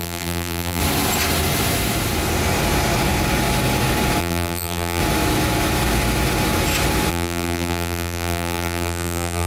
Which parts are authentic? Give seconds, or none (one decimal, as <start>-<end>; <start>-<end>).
0.8-4.2; 5.0-7.1